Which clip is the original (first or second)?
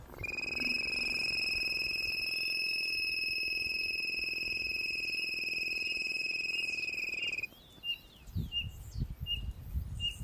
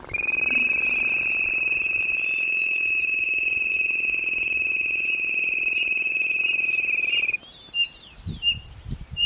first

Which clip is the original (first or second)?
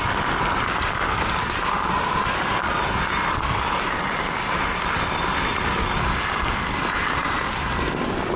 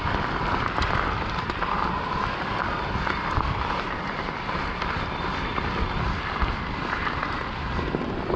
first